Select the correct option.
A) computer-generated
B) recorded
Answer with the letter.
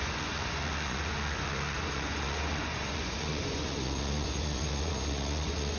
A